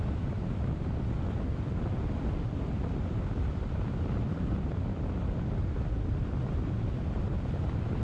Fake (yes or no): yes